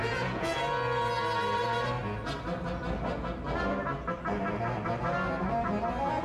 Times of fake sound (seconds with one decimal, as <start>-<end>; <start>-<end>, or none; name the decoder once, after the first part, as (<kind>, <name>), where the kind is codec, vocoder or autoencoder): 0.0-0.6 (vocoder, Vocos)